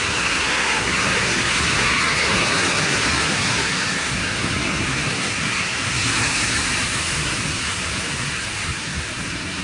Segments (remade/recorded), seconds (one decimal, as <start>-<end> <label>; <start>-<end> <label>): 0.0-9.6 remade